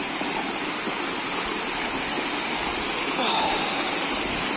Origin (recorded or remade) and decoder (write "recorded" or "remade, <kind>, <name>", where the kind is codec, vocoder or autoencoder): recorded